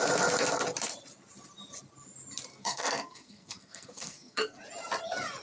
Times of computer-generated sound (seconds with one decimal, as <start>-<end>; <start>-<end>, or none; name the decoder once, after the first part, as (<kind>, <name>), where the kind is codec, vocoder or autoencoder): 2.5-4.6 (codec, SNAC)